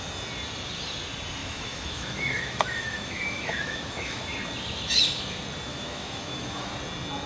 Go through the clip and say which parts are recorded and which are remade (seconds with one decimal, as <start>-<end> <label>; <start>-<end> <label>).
0.0-1.4 recorded; 1.4-4.2 remade; 4.2-5.7 recorded; 5.7-6.7 remade; 6.7-7.3 recorded